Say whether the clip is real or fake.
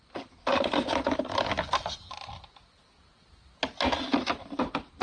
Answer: real